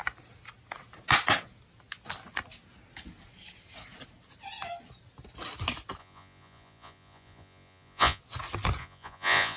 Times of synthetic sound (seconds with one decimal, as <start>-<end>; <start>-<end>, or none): 6.0-8.2; 8.8-9.6